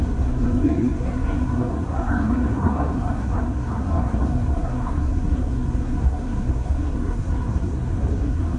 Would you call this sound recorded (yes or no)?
no